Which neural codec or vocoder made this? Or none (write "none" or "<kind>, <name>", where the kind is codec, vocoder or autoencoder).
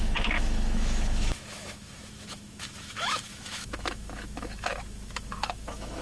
autoencoder, DAC-VAE